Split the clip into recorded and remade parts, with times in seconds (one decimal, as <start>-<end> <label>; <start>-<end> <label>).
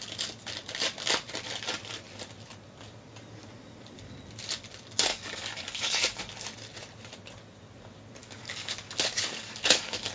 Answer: 0.0-5.1 recorded; 5.1-6.2 remade; 6.2-8.2 recorded; 8.2-10.1 remade